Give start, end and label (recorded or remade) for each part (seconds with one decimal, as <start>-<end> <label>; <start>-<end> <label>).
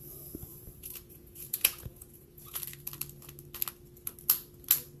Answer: 0.0-0.5 recorded; 0.5-2.6 remade; 2.6-5.0 recorded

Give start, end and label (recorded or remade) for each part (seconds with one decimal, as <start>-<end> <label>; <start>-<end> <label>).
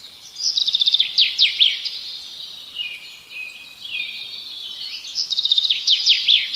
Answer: 0.0-5.1 recorded; 5.1-6.0 remade; 6.0-6.6 recorded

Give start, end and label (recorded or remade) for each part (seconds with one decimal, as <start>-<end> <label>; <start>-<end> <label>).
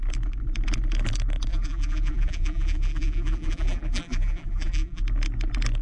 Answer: 0.0-1.5 recorded; 1.5-5.0 remade; 5.0-5.8 recorded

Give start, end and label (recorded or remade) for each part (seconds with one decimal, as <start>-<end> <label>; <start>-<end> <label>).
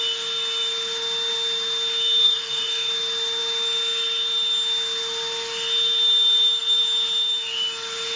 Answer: 0.0-2.2 recorded; 2.2-2.9 remade; 2.9-8.2 recorded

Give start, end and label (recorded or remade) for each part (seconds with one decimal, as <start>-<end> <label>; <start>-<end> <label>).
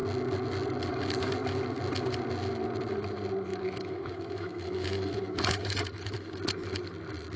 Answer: 0.0-3.5 recorded; 3.5-6.4 remade; 6.4-7.4 recorded